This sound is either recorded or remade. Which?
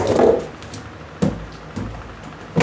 recorded